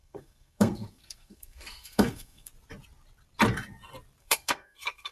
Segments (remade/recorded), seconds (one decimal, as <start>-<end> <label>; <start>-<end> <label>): 0.0-2.5 remade; 2.5-4.2 recorded; 4.2-5.1 remade